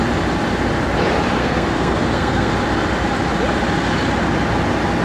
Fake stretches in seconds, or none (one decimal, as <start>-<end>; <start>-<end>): 1.4-2.5